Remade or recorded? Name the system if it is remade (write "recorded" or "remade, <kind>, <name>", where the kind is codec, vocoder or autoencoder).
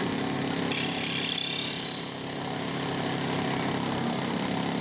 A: recorded